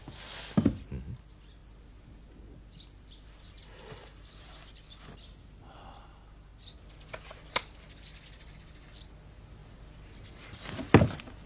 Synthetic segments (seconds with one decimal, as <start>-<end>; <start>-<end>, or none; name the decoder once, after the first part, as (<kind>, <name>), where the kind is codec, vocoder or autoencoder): none